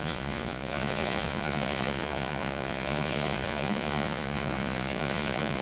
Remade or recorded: remade